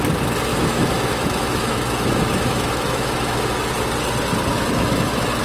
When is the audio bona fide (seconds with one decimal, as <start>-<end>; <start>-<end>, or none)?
0.0-0.5; 3.7-4.5